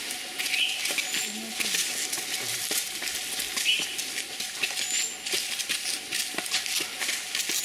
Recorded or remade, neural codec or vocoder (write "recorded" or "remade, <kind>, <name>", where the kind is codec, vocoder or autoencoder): recorded